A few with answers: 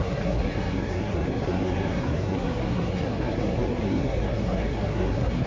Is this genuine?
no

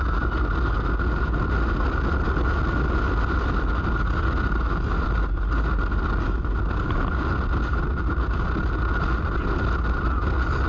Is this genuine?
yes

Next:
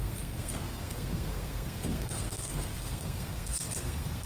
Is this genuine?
no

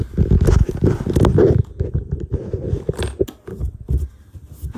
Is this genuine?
yes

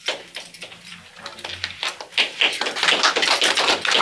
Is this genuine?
yes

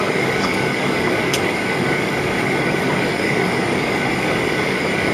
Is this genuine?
no